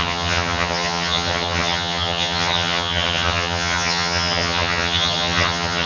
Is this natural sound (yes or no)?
no